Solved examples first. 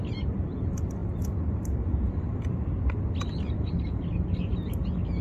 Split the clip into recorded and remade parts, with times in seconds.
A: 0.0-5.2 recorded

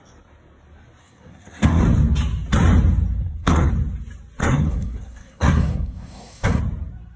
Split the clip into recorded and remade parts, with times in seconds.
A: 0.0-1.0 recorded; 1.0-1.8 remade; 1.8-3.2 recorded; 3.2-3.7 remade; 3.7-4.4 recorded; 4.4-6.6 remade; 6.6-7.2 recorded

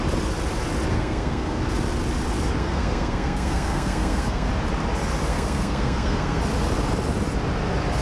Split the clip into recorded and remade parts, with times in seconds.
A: 0.0-0.9 recorded; 0.9-1.6 remade; 1.6-2.6 recorded; 2.6-4.5 remade; 4.5-5.3 recorded; 5.3-6.4 remade; 6.4-8.0 recorded